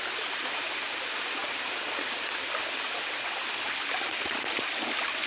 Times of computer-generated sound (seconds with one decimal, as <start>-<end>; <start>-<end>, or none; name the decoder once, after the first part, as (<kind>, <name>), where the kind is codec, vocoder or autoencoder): none